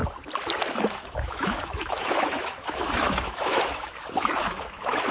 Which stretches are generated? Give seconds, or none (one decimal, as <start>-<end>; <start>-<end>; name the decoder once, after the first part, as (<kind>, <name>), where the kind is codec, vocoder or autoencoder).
0.7-5.1 (autoencoder, DAC-VAE)